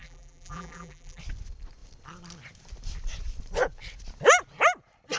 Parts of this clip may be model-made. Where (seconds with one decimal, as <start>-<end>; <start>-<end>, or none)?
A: 0.0-1.2